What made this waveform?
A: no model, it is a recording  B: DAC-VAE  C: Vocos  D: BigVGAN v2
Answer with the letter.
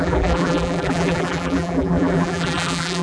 D